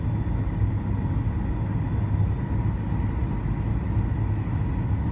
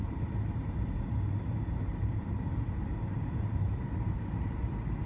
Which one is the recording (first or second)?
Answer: first